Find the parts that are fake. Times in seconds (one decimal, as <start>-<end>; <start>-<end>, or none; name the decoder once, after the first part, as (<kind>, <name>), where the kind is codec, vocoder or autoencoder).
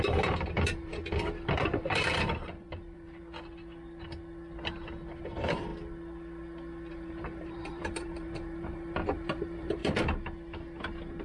0.0-0.9 (vocoder, BigVGAN v2); 1.7-3.2; 5.2-5.7; 6.9-9.8